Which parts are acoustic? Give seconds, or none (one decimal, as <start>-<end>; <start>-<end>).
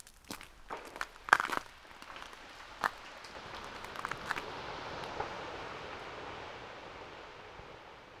0.0-8.2